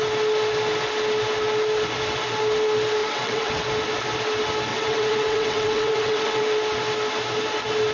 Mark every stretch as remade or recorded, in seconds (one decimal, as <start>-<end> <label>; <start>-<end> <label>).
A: 0.0-3.0 recorded; 3.0-3.7 remade; 3.7-4.7 recorded; 4.7-6.4 remade; 6.4-7.9 recorded